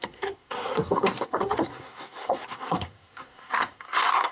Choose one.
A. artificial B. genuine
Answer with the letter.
A